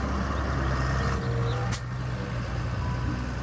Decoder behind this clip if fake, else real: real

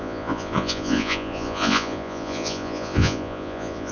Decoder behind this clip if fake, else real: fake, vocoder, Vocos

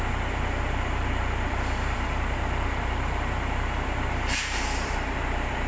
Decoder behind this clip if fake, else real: fake, vocoder, BigVGAN v2